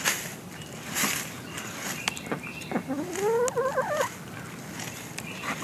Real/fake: real